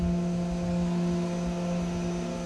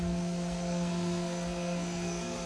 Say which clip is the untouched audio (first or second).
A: first